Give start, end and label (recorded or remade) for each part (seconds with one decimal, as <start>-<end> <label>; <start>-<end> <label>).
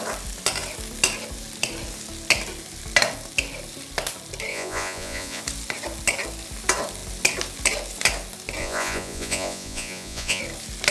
0.0-4.5 recorded; 4.5-5.4 remade; 5.4-8.6 recorded; 8.6-10.4 remade; 10.4-10.9 recorded